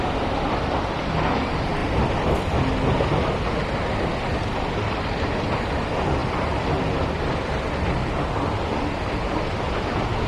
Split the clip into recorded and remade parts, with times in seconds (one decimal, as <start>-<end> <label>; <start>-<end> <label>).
0.0-1.8 recorded; 1.8-2.4 remade; 2.4-10.3 recorded